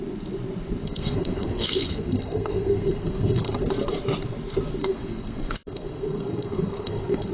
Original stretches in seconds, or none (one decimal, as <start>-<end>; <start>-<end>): 0.0-0.8; 3.6-4.8